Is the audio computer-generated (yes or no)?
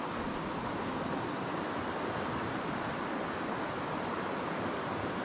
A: no